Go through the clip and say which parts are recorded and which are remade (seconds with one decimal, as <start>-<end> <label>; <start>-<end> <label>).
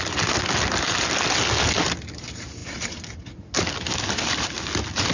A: 0.0-2.6 recorded; 2.6-5.1 remade